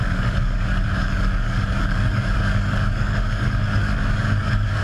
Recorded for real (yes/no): no